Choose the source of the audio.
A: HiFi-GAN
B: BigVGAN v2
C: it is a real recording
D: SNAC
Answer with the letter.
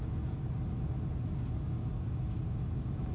C